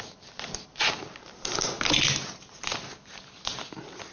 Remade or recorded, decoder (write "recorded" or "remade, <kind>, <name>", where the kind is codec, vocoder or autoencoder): recorded